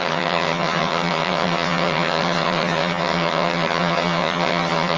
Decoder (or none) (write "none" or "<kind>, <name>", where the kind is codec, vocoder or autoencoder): vocoder, HiFi-GAN